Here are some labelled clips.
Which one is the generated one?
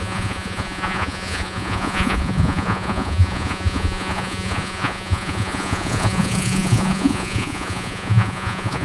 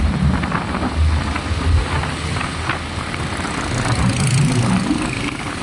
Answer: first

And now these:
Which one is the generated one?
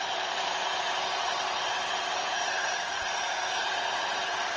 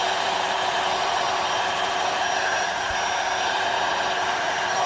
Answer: first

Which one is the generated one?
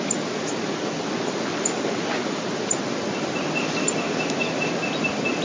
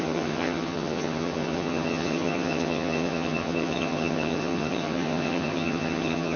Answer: second